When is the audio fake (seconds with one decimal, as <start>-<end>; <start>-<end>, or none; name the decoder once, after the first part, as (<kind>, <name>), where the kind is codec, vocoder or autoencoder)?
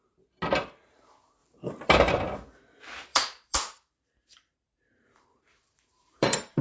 3.1-6.6 (vocoder, BigVGAN v2)